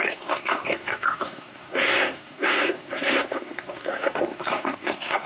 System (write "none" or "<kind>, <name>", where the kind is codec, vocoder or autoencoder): codec, SNAC